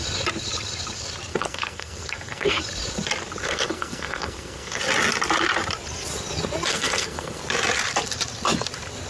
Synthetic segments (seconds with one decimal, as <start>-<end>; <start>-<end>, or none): 1.3-2.6; 3.4-4.8; 6.7-7.4